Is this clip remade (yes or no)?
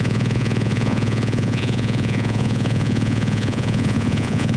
yes